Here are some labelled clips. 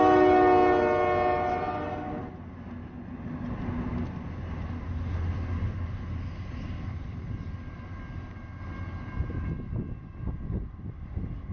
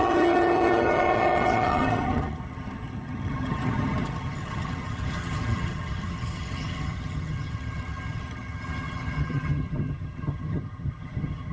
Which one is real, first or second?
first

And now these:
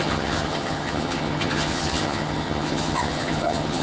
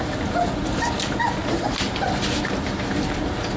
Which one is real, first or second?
second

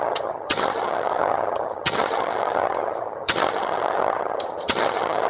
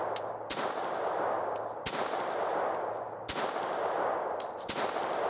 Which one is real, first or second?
second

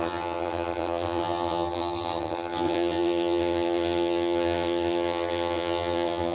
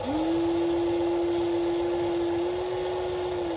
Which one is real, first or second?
second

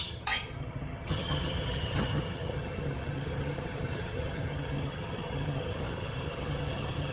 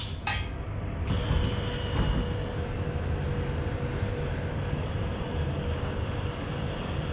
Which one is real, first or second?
second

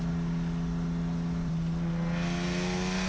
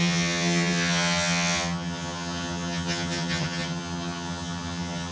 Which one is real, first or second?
first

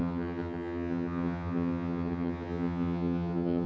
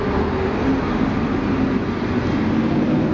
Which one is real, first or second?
second